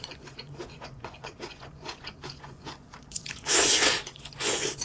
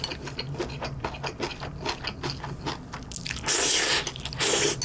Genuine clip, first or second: second